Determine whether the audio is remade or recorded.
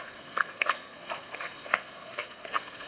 remade